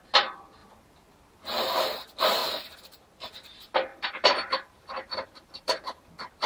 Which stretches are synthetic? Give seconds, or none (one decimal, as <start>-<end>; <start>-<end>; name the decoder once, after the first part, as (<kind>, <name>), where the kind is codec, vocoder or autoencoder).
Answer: 2.4-3.0 (vocoder, BigVGAN v2); 3.9-6.1